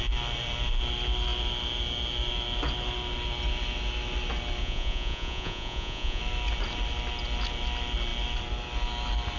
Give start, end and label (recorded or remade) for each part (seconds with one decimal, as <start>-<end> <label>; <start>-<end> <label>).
0.0-4.6 recorded; 4.6-6.2 remade; 6.2-9.4 recorded